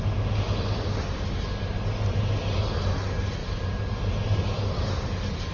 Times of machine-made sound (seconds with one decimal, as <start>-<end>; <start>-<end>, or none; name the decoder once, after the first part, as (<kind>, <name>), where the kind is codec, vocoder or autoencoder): none